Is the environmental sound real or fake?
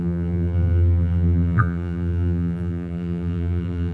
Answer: fake